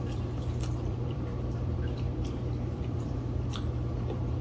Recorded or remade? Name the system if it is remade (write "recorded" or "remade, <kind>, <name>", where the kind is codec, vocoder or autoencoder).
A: remade, vocoder, BigVGAN v2